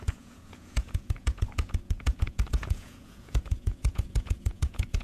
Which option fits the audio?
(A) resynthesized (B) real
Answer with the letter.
A